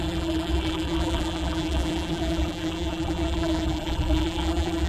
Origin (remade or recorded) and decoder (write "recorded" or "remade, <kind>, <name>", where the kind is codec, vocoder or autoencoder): remade, vocoder, BigVGAN v2